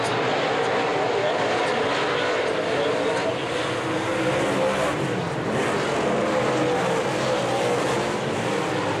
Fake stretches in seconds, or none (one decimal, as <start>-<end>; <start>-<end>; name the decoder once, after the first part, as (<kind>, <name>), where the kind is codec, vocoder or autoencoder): none